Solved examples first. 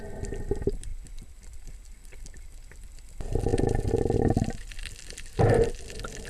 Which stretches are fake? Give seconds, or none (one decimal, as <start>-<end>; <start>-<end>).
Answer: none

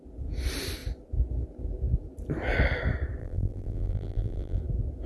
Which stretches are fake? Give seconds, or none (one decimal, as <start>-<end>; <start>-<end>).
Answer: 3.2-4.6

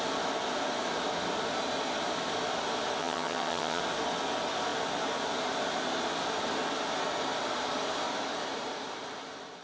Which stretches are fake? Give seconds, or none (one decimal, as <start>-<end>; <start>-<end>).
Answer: 3.0-3.8

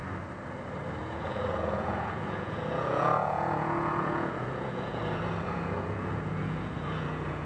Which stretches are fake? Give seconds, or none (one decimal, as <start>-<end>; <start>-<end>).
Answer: 1.0-7.5

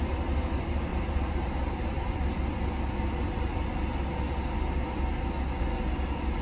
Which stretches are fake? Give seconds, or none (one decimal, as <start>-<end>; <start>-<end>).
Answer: 0.9-2.5